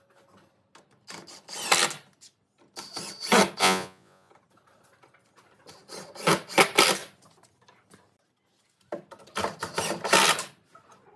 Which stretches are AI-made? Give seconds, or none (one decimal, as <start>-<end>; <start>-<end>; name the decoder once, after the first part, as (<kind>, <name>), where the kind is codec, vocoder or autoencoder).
3.6-4.3 (vocoder, Vocos)